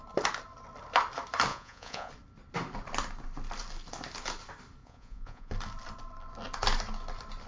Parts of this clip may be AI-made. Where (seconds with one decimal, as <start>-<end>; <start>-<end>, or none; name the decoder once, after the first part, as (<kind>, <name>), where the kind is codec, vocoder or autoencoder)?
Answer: 1.5-2.1 (vocoder, Vocos); 4.8-5.5